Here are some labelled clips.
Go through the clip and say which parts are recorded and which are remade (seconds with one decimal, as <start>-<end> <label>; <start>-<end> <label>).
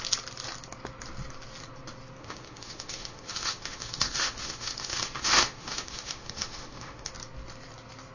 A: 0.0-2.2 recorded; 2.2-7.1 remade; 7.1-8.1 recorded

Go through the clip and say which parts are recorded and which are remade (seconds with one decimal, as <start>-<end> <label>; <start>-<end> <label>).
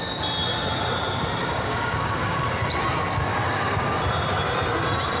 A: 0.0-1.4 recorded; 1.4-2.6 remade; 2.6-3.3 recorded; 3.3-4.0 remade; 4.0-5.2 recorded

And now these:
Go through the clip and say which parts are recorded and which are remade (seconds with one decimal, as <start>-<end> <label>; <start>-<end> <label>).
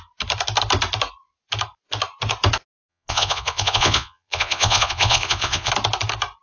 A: 0.0-2.9 recorded; 2.9-5.7 remade; 5.7-6.4 recorded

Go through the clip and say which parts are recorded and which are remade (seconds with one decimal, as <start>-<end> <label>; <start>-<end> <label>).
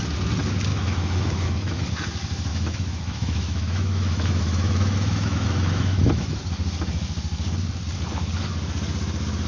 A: 0.0-0.7 recorded; 0.7-1.9 remade; 1.9-2.5 recorded; 2.5-6.4 remade; 6.4-9.5 recorded